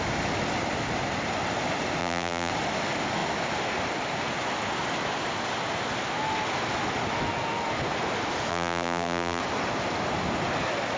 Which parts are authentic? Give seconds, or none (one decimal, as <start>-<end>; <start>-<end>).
0.0-2.0; 2.5-8.5; 9.4-11.0